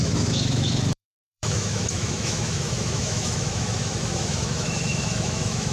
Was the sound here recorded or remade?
remade